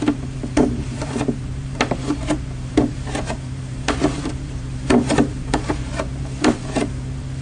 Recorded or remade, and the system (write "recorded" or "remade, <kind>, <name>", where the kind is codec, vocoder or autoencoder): remade, vocoder, BigVGAN v2